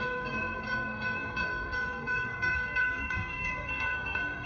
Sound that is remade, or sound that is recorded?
remade